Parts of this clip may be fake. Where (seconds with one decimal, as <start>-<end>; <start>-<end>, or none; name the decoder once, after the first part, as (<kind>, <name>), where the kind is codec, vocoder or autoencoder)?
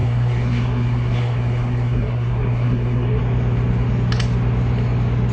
0.0-3.2 (codec, SNAC)